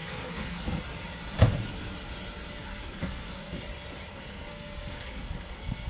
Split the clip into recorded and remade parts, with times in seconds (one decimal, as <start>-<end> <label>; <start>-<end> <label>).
0.0-0.8 remade; 0.8-2.7 recorded; 2.7-3.6 remade; 3.6-4.1 recorded; 4.1-5.9 remade